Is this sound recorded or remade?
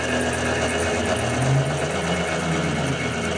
recorded